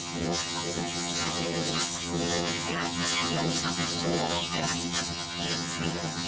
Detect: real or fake fake